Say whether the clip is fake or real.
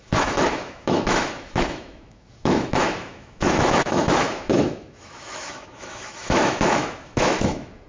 fake